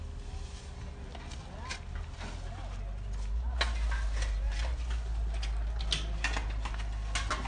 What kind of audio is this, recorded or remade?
recorded